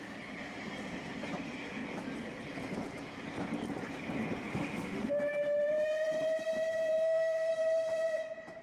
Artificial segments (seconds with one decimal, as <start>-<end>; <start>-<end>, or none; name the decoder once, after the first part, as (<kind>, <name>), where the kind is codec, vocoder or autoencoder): 4.5-5.1 (autoencoder, DAC-VAE); 7.0-7.5